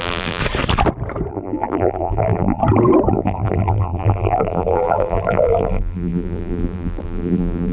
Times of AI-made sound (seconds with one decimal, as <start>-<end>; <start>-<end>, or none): 0.0-0.4; 1.3-2.6; 3.1-7.7

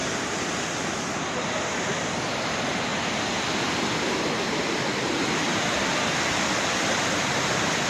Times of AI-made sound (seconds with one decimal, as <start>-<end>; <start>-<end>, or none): none

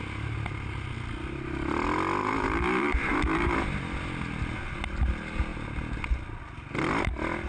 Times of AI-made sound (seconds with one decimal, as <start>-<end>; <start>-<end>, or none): 2.2-3.6

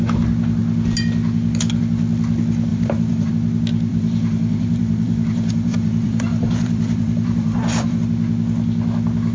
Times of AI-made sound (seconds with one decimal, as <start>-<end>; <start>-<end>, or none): 2.7-3.3; 3.9-8.0